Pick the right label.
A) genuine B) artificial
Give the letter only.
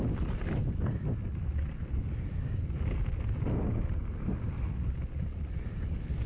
A